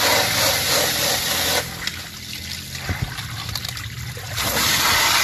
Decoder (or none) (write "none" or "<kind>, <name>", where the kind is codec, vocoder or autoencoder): none